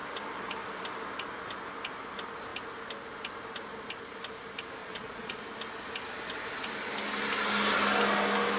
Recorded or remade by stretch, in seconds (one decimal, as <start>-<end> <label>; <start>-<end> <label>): 0.0-4.8 recorded; 4.8-5.4 remade; 5.4-8.6 recorded